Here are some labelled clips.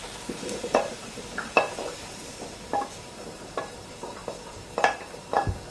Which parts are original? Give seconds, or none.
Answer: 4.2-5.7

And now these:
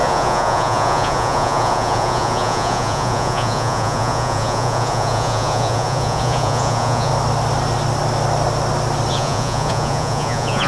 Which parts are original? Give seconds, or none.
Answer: 7.1-9.1

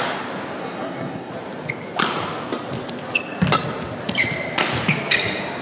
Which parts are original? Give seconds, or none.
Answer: 0.0-0.6; 1.3-5.6

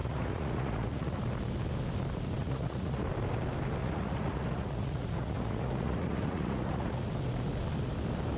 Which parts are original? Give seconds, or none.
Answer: 1.2-2.4; 3.0-3.8; 7.1-8.4

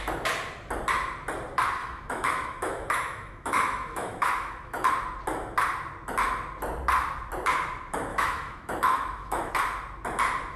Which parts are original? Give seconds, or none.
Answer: 0.0-1.8; 4.9-8.1; 9.5-10.6

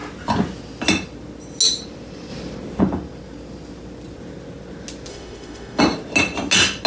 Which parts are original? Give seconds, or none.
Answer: 0.0-5.1; 5.8-6.9

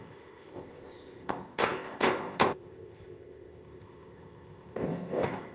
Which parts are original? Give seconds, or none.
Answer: none

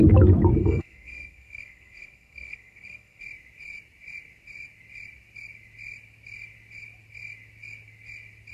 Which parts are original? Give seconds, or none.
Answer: 0.0-0.6; 3.2-8.5